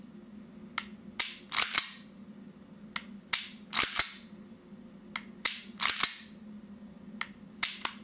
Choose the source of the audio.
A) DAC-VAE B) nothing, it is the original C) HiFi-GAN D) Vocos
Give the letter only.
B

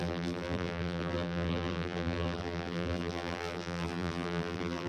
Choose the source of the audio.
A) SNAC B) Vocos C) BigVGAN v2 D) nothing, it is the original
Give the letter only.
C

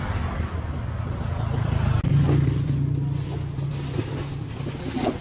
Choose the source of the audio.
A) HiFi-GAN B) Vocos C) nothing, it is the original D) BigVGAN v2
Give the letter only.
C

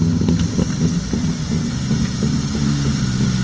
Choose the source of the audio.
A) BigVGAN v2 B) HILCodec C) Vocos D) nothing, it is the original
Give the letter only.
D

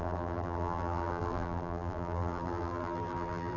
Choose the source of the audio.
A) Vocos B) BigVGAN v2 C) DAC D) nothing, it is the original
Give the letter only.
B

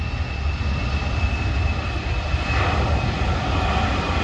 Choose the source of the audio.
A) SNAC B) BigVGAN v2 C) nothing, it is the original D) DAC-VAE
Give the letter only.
C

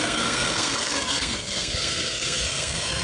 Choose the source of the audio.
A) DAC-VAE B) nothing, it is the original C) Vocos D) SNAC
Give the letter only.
D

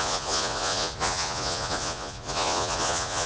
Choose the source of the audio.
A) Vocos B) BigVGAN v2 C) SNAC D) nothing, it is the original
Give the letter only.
A